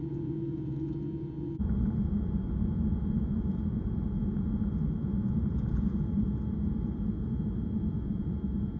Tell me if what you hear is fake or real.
fake